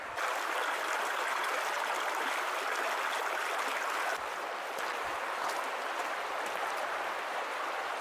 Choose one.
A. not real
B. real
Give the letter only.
B